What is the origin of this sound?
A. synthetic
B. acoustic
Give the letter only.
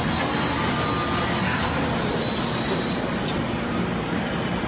B